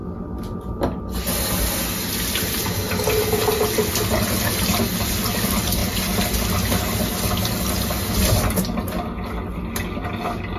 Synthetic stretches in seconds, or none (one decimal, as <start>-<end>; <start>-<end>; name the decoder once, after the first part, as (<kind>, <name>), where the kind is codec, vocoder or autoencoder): none